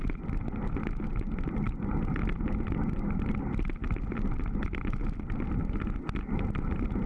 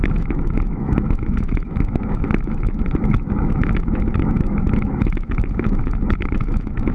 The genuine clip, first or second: first